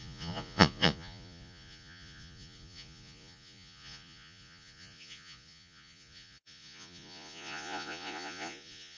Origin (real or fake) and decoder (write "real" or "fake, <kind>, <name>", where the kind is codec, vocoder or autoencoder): fake, vocoder, Vocos